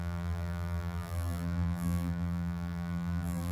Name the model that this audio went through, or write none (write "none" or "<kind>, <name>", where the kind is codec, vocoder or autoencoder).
vocoder, BigVGAN v2